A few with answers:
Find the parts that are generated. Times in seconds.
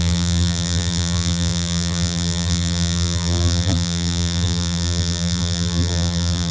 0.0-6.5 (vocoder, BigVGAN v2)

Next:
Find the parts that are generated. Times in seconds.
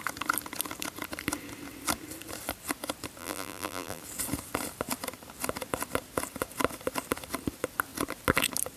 3.2-4.0 (vocoder, BigVGAN v2)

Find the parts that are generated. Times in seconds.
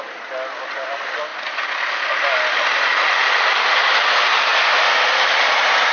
4.5-5.5 (vocoder, BigVGAN v2)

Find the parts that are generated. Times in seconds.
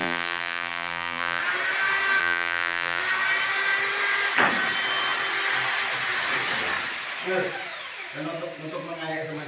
0.0-1.4 (vocoder, BigVGAN v2); 2.2-3.0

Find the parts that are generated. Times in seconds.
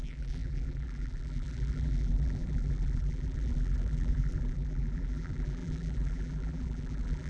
0.0-7.3 (vocoder, BigVGAN v2)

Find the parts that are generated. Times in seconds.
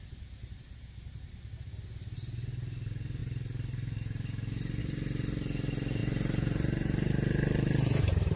6.0-7.9 (vocoder, BigVGAN v2)